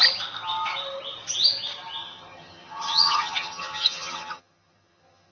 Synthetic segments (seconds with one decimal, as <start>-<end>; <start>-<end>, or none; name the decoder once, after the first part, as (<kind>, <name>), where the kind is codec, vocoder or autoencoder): 2.0-5.3 (vocoder, HiFi-GAN)